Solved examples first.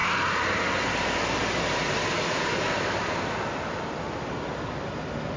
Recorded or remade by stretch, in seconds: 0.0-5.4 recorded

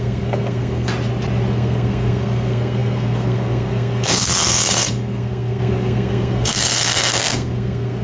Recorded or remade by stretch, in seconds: 0.0-0.9 remade; 0.9-1.5 recorded; 1.5-8.0 remade

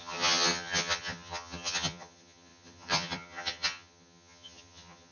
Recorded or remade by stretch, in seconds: 0.0-5.1 remade

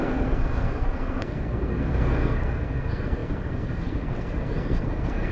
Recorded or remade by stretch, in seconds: 0.0-5.3 remade